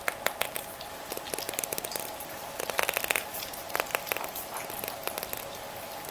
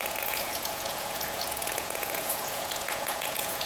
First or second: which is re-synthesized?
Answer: second